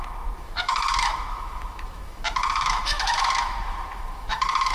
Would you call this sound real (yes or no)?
no